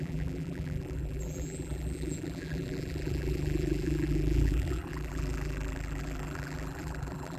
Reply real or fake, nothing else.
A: fake